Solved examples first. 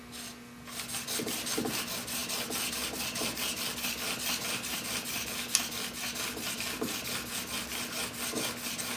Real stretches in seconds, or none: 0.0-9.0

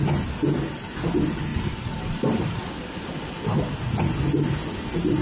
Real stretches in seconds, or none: 0.0-1.5; 2.7-5.2

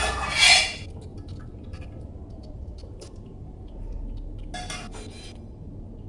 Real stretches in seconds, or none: 0.0-1.1; 3.9-6.1

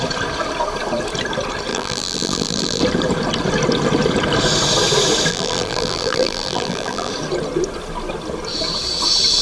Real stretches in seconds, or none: 0.0-1.7; 2.8-5.3; 7.1-9.4

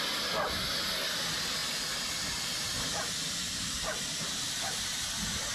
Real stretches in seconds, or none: 0.0-1.6; 4.9-5.5